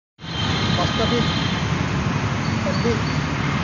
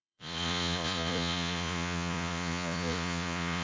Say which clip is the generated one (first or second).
second